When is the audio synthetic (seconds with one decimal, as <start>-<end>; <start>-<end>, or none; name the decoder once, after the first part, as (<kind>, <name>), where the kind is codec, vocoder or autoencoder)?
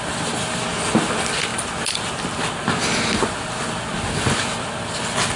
none